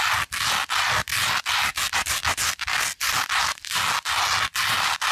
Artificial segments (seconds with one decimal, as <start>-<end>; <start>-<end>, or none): none